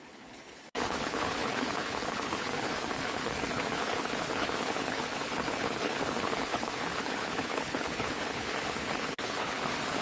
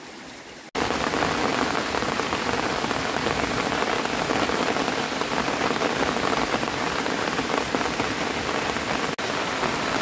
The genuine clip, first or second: second